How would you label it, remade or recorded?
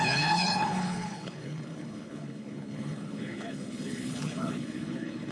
remade